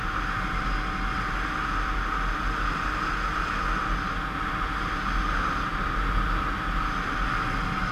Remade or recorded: recorded